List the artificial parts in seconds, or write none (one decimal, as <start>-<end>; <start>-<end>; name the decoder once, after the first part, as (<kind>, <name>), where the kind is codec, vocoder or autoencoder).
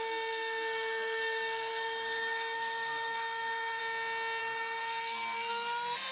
0.0-3.8 (codec, SNAC); 4.4-6.1